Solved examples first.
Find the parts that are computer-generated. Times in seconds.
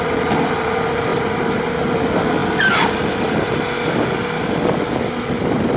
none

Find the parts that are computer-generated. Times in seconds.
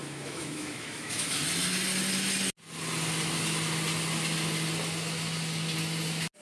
0.0-1.4 (autoencoder, DAC-VAE)